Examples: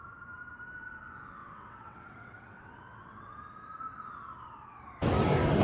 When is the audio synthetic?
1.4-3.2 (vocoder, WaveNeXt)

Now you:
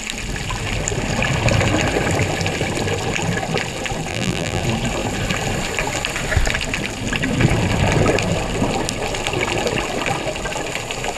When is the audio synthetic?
4.1-4.6 (vocoder, BigVGAN v2)

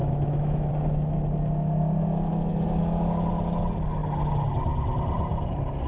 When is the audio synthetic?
0.0-0.7 (autoencoder, DAC-VAE)

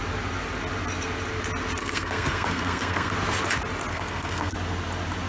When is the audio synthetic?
1.8-3.1 (codec, SNAC); 3.9-4.5

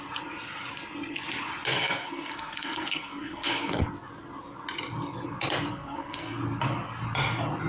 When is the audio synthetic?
1.7-3.8 (codec, SNAC); 5.7-6.4

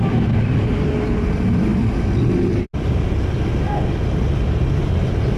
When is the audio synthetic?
none